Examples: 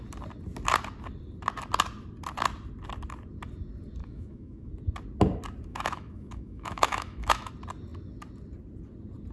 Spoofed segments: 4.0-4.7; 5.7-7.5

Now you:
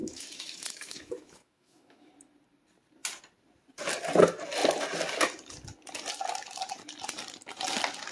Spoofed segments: 0.0-2.1

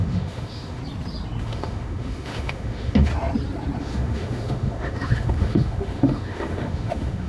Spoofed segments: 0.0-0.8; 1.4-3.1; 3.8-7.3

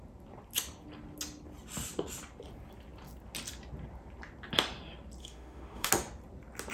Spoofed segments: 5.2-5.9

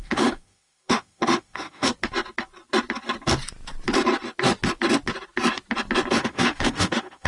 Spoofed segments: 0.0-1.9; 6.1-7.3